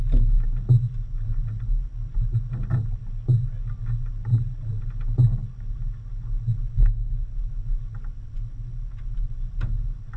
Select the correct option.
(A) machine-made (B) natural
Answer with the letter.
B